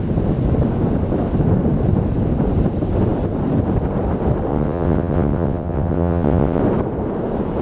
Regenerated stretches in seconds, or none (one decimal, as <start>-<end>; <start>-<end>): 4.5-6.6